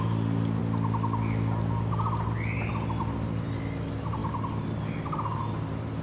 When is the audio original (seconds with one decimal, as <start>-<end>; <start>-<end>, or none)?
0.0-6.0